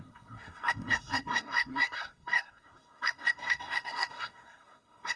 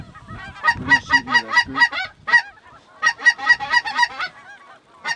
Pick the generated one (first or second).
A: first